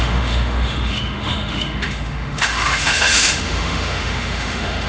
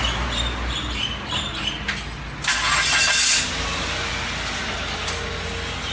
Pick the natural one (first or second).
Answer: second